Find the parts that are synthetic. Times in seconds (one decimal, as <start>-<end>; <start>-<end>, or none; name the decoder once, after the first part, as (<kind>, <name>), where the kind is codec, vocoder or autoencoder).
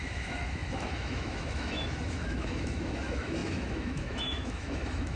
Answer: 0.0-5.2 (autoencoder, DAC-VAE)